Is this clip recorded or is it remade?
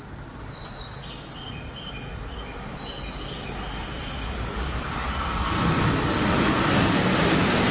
recorded